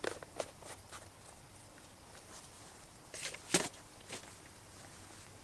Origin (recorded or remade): recorded